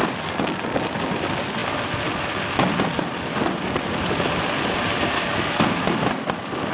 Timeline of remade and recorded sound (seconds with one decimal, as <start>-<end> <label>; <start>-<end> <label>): 0.0-6.7 recorded